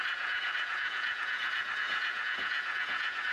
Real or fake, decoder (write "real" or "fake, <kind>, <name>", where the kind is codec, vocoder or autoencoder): fake, vocoder, Vocos